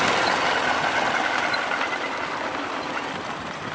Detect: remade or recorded recorded